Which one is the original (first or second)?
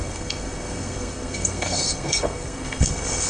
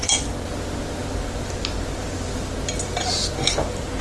second